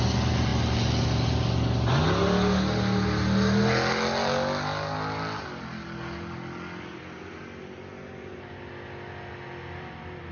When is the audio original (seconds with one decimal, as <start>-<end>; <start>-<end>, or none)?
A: 0.0-10.3